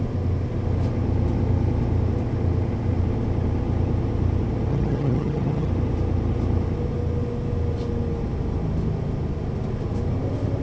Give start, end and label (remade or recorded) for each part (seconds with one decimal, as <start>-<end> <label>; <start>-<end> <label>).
0.0-4.7 recorded; 4.7-5.7 remade; 5.7-10.6 recorded